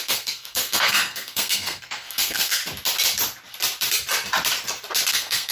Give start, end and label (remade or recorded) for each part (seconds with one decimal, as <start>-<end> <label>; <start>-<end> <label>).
0.0-2.6 remade; 2.6-5.1 recorded; 5.1-5.5 remade